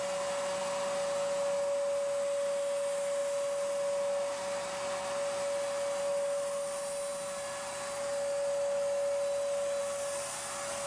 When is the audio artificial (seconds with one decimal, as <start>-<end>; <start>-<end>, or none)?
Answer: none